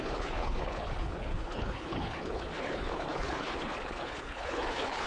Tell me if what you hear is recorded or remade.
remade